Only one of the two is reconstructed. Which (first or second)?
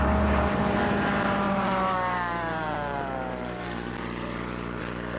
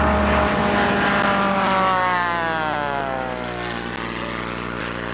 first